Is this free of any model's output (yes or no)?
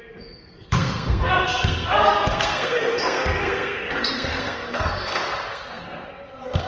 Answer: no